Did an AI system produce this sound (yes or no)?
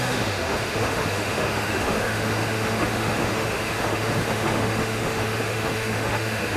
yes